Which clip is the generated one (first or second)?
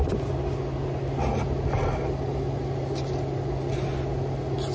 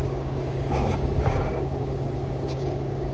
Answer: second